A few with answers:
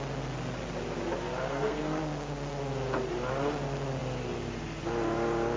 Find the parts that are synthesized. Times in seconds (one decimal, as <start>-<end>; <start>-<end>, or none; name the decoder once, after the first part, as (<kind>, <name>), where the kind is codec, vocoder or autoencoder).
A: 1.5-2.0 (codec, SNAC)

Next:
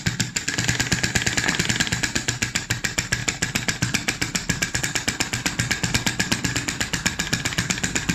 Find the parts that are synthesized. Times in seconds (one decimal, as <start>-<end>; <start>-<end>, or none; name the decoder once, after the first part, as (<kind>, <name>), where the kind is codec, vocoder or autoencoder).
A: 3.2-4.8 (vocoder, BigVGAN v2)

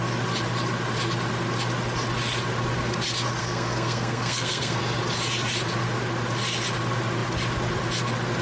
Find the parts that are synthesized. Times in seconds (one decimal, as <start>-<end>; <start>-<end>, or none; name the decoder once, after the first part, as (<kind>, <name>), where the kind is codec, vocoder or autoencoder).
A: 3.4-4.8 (codec, SNAC)

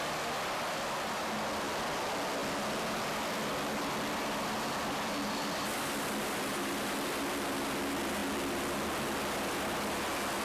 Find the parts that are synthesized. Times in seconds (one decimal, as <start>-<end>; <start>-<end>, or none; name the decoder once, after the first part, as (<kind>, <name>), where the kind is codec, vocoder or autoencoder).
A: none

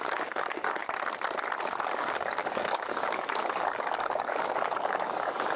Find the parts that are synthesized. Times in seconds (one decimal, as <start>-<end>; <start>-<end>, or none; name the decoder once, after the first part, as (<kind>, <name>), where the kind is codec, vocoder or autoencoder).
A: 0.0-0.8 (codec, DAC); 2.0-5.6

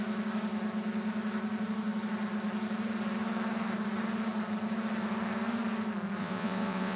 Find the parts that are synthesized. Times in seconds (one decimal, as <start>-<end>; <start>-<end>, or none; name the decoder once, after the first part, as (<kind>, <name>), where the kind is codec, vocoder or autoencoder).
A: 6.2-7.0 (vocoder, Vocos)